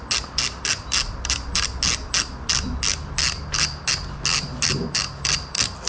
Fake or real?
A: real